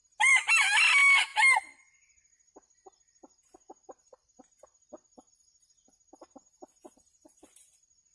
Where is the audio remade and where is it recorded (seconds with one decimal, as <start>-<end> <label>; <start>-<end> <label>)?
0.0-8.1 recorded